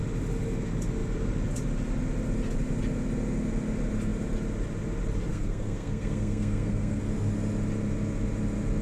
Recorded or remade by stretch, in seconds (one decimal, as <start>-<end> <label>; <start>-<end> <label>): 0.0-5.3 recorded; 5.3-7.0 remade; 7.0-8.8 recorded